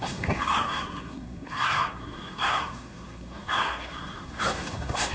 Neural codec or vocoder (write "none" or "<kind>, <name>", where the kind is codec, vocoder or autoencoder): codec, SNAC